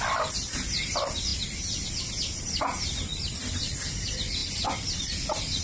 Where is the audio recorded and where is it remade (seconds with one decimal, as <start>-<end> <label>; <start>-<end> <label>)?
0.0-3.1 recorded; 3.1-3.7 remade; 3.7-4.4 recorded; 4.4-5.6 remade